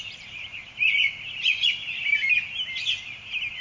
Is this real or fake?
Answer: real